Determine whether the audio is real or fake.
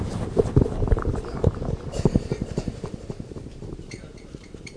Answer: fake